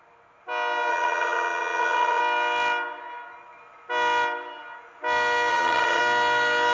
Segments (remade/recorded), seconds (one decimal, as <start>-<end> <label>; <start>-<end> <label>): 0.0-0.9 recorded; 0.9-2.2 remade; 2.2-5.5 recorded; 5.5-6.0 remade; 6.0-6.7 recorded